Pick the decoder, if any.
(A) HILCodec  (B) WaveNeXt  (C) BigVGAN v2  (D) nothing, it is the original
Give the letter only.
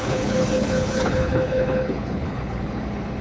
A